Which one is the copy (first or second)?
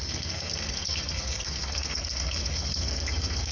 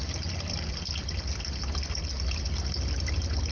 first